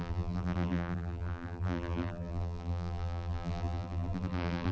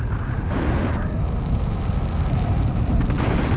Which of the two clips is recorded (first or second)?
second